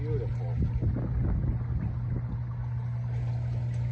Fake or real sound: real